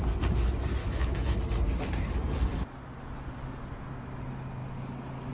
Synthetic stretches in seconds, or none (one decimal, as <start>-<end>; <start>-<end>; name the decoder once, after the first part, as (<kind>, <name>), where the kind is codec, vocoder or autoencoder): 0.8-1.4 (autoencoder, DAC-VAE)